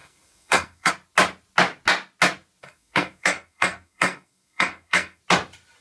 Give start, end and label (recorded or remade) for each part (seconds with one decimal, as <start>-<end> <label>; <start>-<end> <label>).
0.0-0.9 remade; 0.9-2.6 recorded; 2.6-5.2 remade; 5.2-5.8 recorded